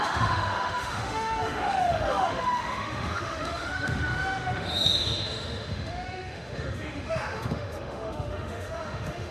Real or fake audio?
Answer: fake